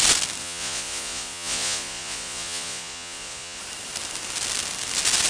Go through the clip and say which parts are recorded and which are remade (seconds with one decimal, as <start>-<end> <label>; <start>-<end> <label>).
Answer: 0.0-0.4 recorded; 0.4-3.6 remade; 3.6-5.3 recorded